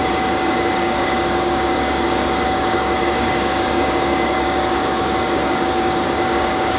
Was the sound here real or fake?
fake